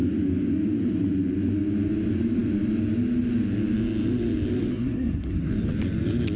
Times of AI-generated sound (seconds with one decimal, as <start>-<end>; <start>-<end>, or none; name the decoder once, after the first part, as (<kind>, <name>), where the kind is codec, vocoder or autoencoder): 4.7-5.5 (codec, SNAC)